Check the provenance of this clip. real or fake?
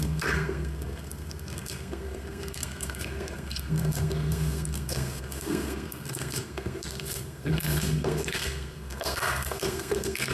fake